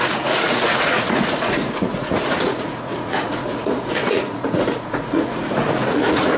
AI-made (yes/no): yes